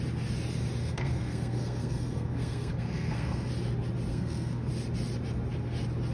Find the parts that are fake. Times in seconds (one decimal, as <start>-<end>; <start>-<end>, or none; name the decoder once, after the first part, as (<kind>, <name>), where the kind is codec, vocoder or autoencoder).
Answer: 0.8-3.5 (codec, SNAC); 4.1-4.7